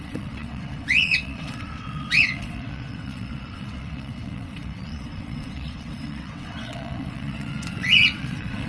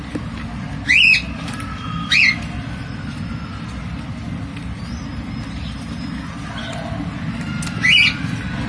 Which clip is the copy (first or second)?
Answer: first